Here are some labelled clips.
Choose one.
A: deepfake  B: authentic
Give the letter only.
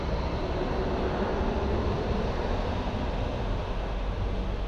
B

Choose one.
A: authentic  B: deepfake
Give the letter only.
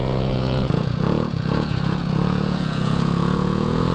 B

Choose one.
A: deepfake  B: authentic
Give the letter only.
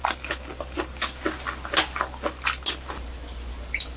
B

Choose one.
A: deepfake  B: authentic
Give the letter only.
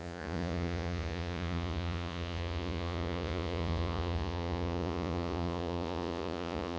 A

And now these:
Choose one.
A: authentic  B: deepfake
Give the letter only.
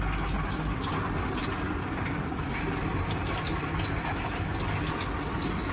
A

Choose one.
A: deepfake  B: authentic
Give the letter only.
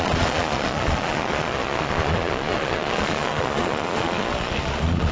A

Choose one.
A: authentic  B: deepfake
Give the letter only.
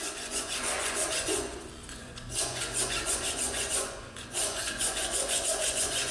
B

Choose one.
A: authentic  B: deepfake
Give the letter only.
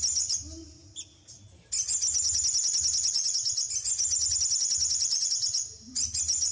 A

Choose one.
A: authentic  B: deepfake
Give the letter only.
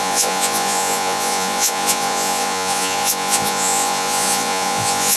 B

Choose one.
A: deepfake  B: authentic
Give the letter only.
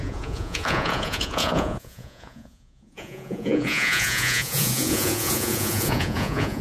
A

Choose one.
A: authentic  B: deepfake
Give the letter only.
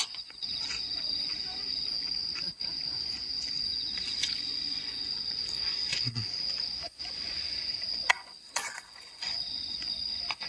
B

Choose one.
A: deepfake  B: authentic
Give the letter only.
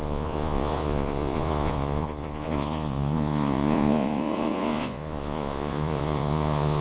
A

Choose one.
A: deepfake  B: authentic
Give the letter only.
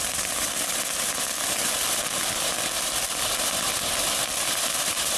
B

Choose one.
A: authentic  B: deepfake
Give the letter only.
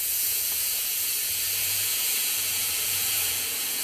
B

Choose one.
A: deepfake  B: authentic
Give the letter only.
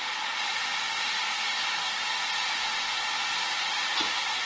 B